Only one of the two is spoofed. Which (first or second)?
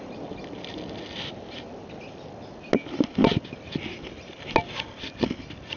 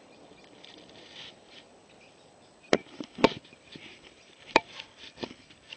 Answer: second